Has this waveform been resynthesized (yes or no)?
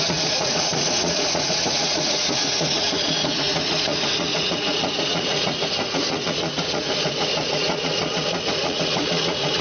yes